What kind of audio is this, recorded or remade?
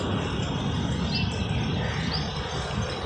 recorded